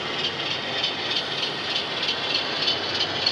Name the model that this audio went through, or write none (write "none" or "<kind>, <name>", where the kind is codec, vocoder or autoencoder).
none